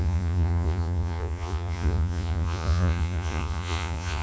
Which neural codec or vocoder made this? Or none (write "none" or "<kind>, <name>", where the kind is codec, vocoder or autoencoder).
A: vocoder, Vocos